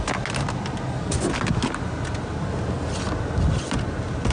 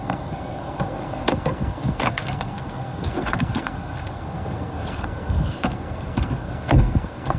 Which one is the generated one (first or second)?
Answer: second